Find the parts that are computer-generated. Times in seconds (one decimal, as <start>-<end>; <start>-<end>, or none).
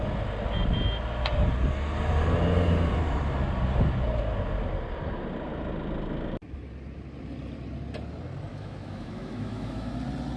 8.5-9.9